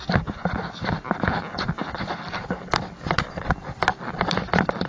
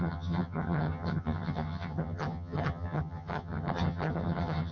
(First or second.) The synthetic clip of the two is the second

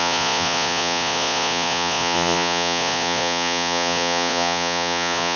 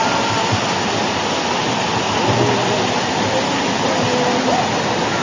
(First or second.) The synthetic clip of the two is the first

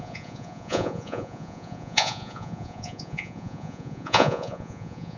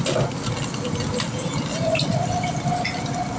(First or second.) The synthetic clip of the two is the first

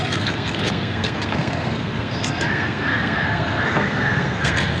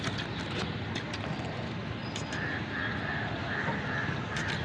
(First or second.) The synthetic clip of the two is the first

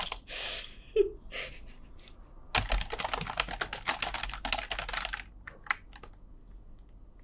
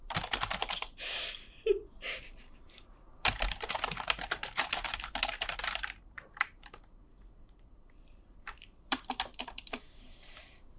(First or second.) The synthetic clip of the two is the second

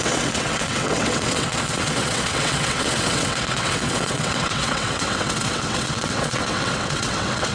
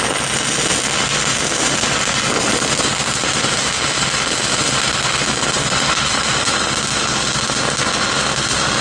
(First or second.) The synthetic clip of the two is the first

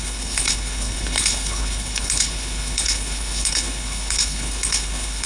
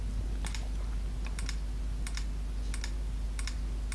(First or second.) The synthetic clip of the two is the first